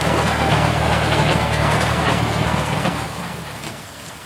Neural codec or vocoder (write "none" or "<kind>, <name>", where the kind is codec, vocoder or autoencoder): codec, SNAC